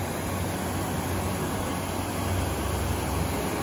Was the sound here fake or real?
real